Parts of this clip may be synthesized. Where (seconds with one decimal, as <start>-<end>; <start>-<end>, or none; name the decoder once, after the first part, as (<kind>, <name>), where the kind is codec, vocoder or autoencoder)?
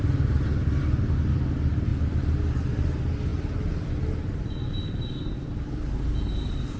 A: none